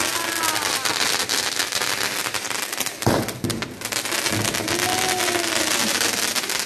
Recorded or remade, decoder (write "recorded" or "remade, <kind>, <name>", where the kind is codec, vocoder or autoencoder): recorded